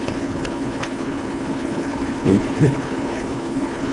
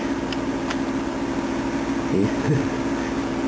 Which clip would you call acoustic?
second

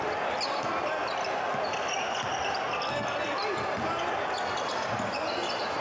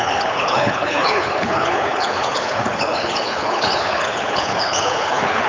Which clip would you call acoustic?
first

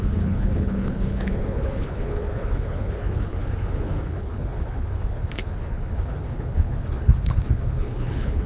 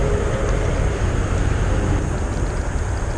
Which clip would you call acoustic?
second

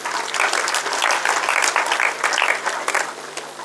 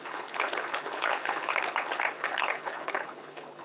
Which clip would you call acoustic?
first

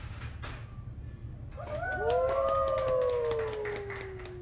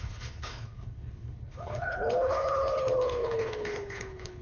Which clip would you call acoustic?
first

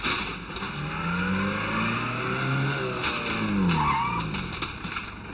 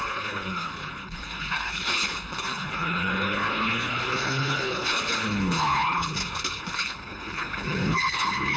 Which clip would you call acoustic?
first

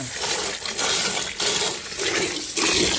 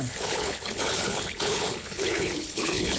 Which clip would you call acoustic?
first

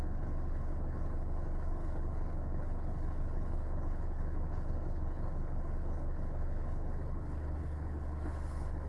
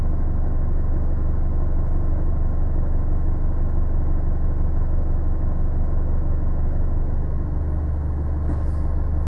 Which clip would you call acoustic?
second